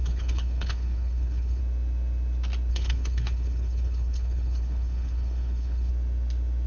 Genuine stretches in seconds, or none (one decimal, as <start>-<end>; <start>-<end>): 1.6-2.7; 5.9-6.7